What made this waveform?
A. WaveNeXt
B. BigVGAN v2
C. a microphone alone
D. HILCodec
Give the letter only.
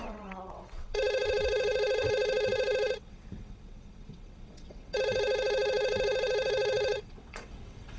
A